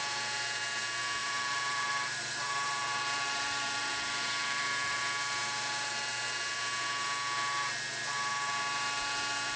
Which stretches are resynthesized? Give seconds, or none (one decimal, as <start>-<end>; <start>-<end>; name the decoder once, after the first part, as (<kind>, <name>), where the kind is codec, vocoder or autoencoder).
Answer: 1.2-5.0 (vocoder, BigVGAN v2)